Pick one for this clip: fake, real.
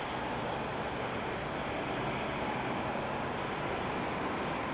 real